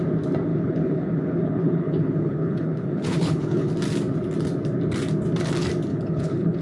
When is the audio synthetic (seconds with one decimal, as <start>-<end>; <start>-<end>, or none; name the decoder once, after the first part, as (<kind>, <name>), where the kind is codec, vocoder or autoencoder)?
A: 0.5-3.7 (codec, HILCodec); 5.9-6.6